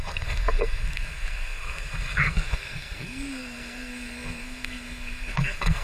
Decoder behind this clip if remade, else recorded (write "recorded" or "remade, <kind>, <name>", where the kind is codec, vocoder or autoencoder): remade, codec, SNAC